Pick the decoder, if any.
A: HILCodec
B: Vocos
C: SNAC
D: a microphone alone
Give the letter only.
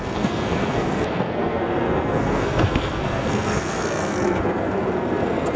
C